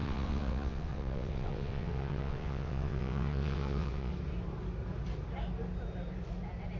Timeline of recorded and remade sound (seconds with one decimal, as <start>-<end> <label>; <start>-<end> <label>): 0.0-4.1 remade; 4.1-6.8 recorded